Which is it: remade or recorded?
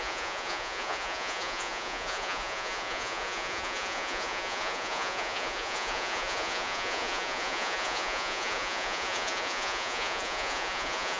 remade